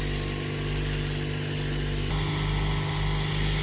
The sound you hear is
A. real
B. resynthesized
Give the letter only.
A